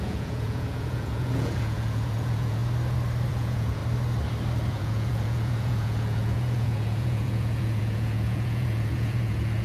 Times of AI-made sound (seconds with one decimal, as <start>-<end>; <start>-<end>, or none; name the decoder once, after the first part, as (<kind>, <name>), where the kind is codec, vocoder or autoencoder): 0.0-2.6 (vocoder, Vocos); 3.3-3.8; 4.7-9.6